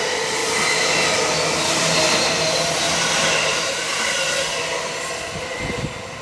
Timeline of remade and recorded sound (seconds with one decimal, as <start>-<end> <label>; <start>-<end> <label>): 0.0-3.5 recorded; 3.5-4.1 remade; 4.1-6.2 recorded